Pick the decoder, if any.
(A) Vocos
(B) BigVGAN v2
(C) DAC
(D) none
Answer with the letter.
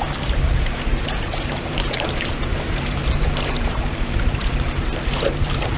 B